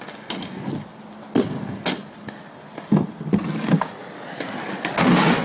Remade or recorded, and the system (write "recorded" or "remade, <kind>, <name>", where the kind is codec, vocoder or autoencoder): recorded